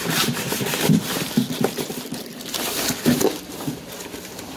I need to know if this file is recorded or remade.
remade